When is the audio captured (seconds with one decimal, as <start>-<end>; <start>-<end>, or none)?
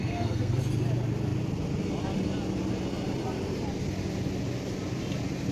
0.6-5.5